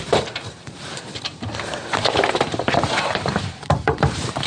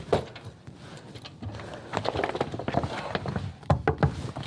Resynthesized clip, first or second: first